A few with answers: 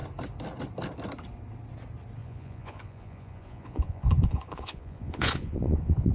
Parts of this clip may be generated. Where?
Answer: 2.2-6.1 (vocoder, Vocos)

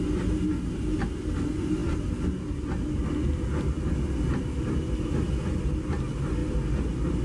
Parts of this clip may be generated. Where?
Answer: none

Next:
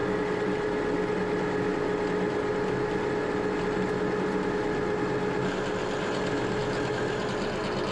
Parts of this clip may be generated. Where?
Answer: none